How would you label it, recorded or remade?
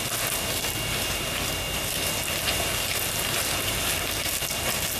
recorded